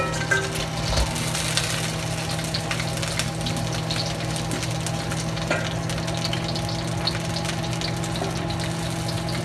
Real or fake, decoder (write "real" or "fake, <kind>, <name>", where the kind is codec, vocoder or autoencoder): real